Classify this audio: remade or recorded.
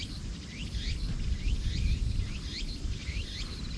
remade